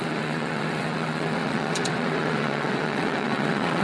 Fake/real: fake